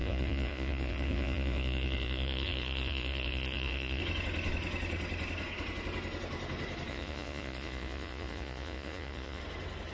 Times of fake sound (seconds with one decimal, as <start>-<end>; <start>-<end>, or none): 0.0-4.0; 6.9-9.4